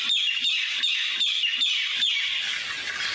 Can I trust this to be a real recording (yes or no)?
yes